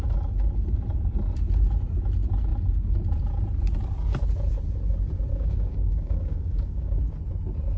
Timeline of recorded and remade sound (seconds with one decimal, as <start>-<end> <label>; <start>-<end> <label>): 0.0-5.3 recorded; 5.3-7.0 remade; 7.0-7.8 recorded